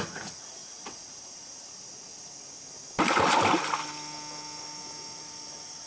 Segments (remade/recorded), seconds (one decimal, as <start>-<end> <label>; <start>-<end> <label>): 0.0-2.1 remade; 2.1-5.9 recorded

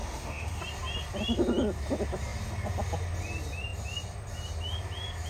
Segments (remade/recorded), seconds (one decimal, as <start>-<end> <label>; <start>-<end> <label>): 0.0-0.6 remade; 0.6-5.3 recorded

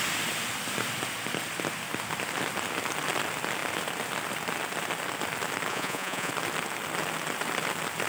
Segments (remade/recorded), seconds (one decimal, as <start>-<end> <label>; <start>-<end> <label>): 0.0-5.7 recorded; 5.7-6.3 remade; 6.3-8.1 recorded